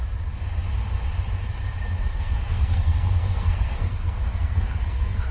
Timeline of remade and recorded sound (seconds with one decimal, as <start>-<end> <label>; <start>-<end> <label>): 0.0-2.1 recorded; 2.1-5.3 remade

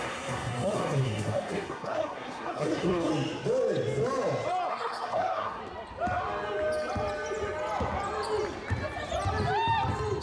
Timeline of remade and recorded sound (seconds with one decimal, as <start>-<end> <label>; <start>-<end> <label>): 0.0-3.1 remade; 3.1-4.7 recorded; 4.7-5.6 remade; 5.6-10.2 recorded

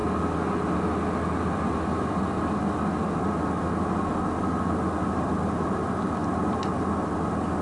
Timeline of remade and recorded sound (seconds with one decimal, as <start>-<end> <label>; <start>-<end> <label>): 0.0-7.6 recorded

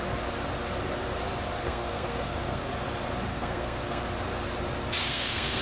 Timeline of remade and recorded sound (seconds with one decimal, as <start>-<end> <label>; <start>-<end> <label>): 0.0-1.6 recorded; 1.6-2.7 remade; 2.7-3.3 recorded; 3.3-4.0 remade; 4.0-5.0 recorded; 5.0-5.6 remade

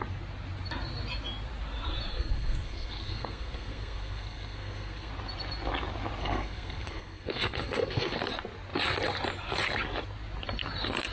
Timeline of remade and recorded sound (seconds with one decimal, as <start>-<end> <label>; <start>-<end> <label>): 0.0-2.1 recorded; 2.1-5.1 remade; 5.1-6.2 recorded; 6.2-8.2 remade; 8.2-11.1 recorded

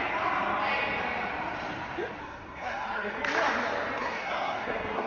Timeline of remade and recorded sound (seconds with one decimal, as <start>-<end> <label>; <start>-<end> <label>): 0.0-2.2 recorded; 2.2-3.2 remade; 3.2-4.0 recorded; 4.0-5.1 remade